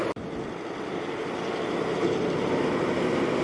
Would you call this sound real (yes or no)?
no